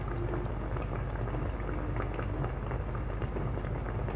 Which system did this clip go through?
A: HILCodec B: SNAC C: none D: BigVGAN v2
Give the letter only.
C